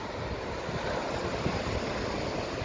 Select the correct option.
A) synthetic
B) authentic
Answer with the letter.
B